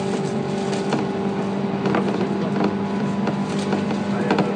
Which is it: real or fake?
real